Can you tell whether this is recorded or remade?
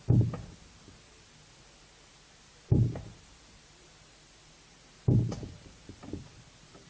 recorded